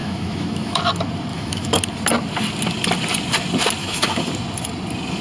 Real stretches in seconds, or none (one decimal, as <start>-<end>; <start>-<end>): 0.8-1.3; 1.8-3.8; 4.3-5.2